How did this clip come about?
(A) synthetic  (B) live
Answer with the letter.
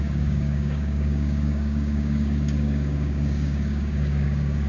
A